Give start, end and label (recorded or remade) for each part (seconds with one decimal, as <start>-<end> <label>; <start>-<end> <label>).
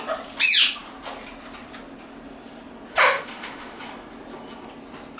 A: 0.0-2.9 recorded; 2.9-3.8 remade; 3.8-5.2 recorded